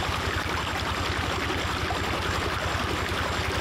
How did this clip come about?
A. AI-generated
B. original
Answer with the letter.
B